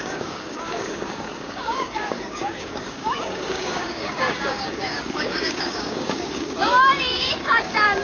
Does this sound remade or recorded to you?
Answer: remade